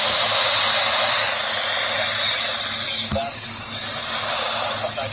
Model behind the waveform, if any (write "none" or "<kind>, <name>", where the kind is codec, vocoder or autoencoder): none